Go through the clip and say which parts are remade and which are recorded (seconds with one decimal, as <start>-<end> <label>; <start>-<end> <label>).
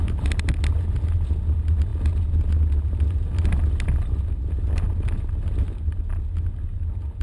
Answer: 0.0-7.2 recorded